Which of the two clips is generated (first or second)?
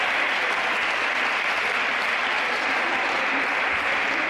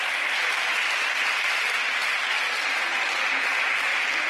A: first